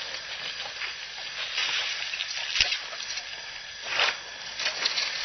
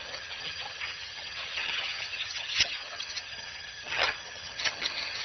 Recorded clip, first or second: first